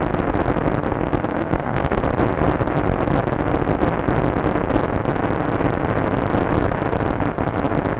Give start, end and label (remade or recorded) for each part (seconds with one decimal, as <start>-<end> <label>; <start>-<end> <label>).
0.0-1.3 recorded; 1.3-2.0 remade; 2.0-8.0 recorded